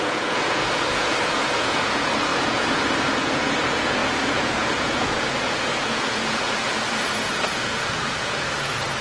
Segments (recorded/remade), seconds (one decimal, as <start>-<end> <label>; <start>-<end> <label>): 0.0-9.0 remade